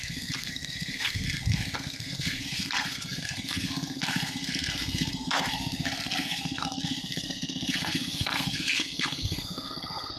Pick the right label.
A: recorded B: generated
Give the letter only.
B